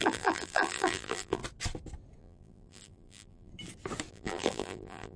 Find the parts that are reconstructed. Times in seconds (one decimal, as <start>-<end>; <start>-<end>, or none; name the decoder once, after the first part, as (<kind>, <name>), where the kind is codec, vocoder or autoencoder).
0.0-1.4 (vocoder, BigVGAN v2); 2.2-3.5; 4.1-5.2